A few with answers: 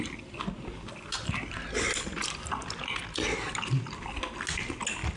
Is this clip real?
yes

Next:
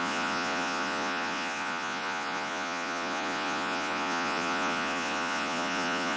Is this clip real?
no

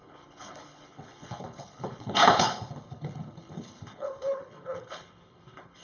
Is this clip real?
no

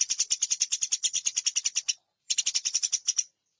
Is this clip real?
yes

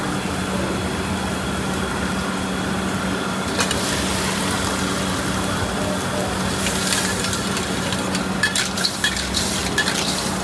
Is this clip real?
yes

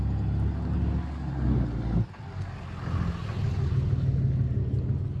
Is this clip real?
yes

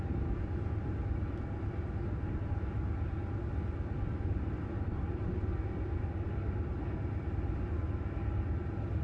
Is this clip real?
yes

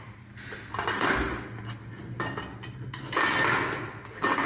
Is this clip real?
yes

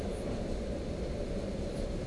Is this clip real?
yes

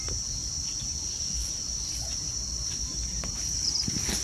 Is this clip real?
yes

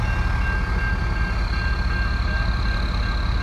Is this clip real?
yes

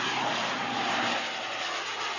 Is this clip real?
yes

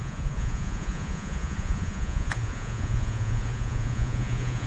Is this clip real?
no